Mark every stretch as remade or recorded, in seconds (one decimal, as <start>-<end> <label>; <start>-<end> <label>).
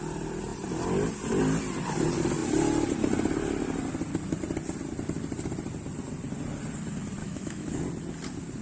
0.0-7.2 recorded; 7.2-7.8 remade; 7.8-8.6 recorded